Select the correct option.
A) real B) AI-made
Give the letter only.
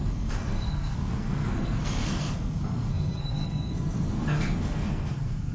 B